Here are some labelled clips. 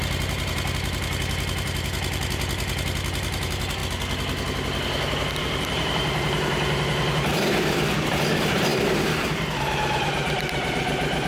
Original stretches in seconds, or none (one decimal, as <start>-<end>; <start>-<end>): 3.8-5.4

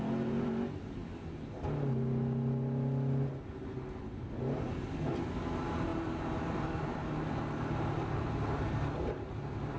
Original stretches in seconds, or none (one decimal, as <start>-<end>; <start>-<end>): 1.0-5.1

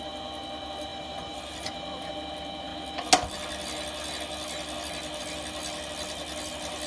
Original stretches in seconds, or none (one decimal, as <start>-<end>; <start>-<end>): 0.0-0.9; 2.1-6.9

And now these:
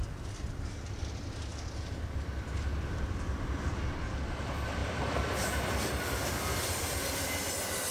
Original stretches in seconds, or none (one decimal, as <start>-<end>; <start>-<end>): 0.0-1.5; 3.7-4.8; 7.5-7.9

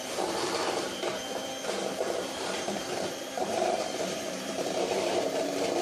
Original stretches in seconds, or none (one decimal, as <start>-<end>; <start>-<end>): 1.1-1.6

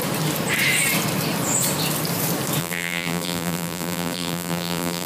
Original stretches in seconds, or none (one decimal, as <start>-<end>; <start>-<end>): 0.0-2.6